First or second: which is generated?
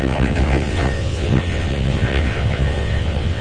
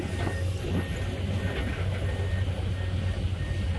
first